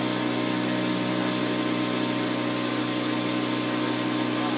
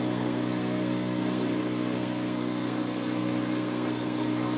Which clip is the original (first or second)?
first